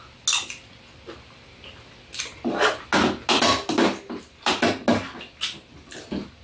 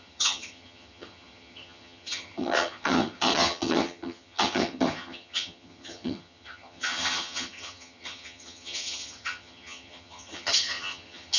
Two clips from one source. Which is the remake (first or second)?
second